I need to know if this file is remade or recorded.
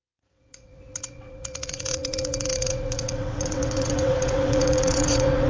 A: remade